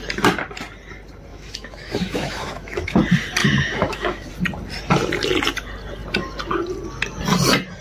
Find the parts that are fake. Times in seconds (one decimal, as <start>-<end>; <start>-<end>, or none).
1.3-3.0; 3.4-4.3